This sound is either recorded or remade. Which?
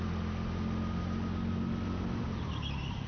recorded